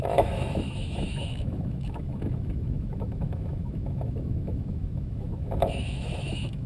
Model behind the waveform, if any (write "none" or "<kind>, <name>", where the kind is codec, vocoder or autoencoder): autoencoder, DAC-VAE